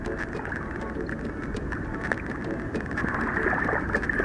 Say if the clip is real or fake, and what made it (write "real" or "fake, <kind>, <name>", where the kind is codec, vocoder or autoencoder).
real